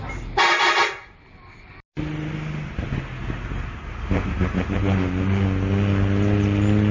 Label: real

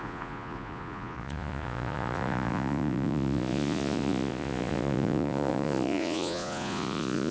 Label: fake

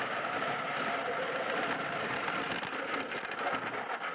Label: real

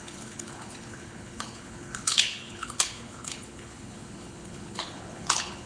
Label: fake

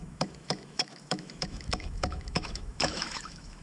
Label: fake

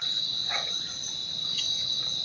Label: real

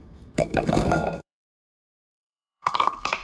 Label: fake